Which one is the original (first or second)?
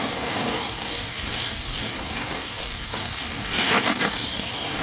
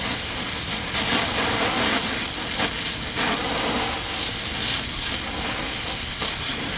second